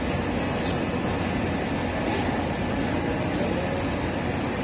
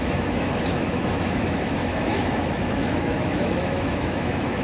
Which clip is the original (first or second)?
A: first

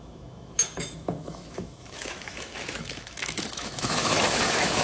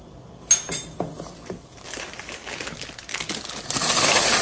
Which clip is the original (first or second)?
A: second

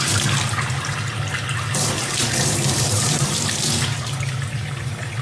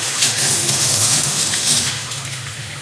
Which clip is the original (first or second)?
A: first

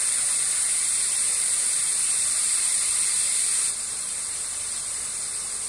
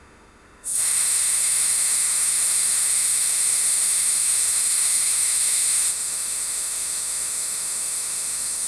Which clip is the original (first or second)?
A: first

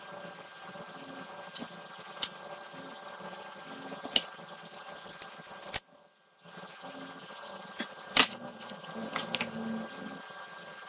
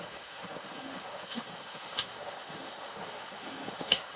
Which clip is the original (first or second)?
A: first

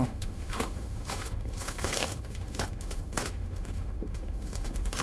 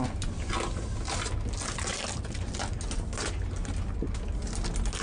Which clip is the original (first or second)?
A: second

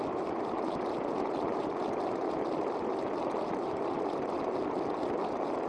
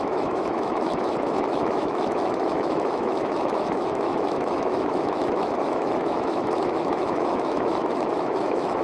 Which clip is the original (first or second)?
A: first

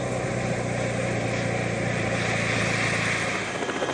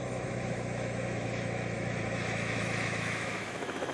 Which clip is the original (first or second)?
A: first